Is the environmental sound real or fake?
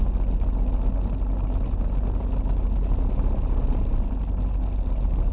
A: real